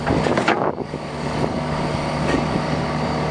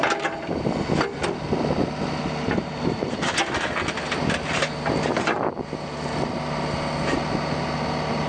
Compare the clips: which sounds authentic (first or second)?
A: second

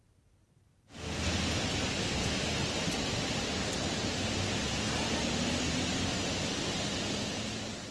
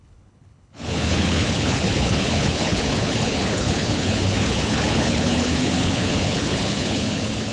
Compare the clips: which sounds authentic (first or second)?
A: first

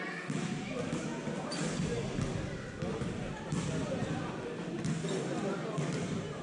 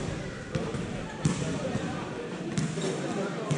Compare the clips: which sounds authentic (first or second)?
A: first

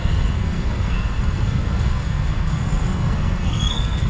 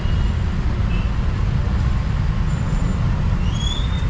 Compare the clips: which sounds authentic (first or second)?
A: second